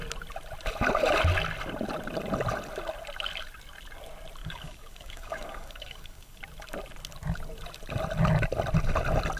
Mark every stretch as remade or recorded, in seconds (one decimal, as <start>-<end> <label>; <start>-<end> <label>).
0.0-4.4 recorded; 4.4-6.4 remade; 6.4-9.4 recorded